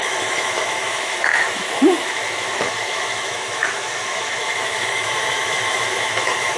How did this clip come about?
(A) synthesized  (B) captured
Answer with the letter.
A